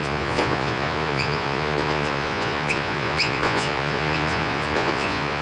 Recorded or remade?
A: remade